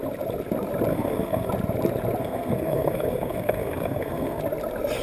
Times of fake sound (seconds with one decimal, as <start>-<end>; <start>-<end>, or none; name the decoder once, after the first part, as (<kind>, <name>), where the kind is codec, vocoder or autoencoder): 0.9-1.5 (codec, SNAC); 2.2-4.4